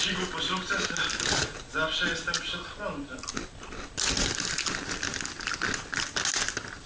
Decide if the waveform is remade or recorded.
recorded